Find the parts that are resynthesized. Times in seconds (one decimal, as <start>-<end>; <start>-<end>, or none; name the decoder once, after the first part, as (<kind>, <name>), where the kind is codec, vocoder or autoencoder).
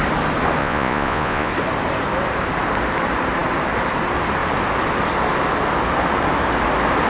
0.6-1.5 (vocoder, Vocos)